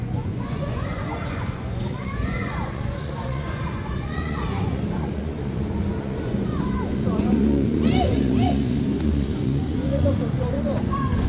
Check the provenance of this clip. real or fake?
fake